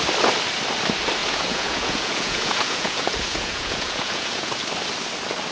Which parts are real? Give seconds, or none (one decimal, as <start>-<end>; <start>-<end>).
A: 0.0-1.2; 4.5-5.5